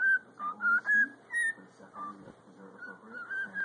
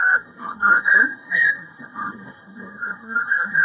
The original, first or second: first